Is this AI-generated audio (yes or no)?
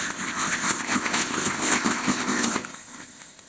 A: yes